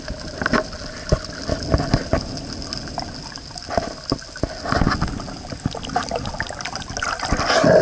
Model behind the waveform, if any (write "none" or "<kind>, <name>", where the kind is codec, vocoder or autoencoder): none